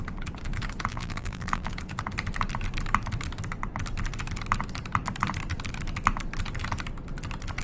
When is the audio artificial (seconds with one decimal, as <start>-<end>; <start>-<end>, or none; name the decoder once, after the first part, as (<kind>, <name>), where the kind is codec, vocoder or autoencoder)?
0.9-1.7 (vocoder, BigVGAN v2)